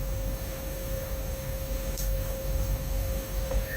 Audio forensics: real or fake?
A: fake